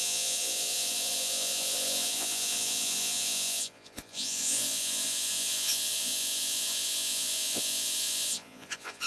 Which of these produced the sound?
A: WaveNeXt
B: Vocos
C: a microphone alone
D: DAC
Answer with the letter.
B